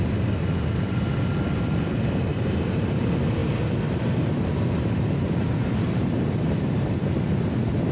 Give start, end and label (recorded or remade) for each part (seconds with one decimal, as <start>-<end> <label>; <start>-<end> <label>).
0.0-2.3 recorded; 2.3-3.0 remade; 3.0-3.4 recorded; 3.4-7.0 remade; 7.0-7.9 recorded